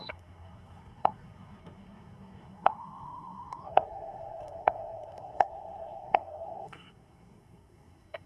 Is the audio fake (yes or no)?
yes